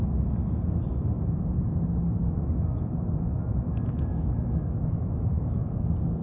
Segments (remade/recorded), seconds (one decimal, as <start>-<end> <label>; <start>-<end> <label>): 0.0-3.3 recorded; 3.3-5.8 remade; 5.8-6.2 recorded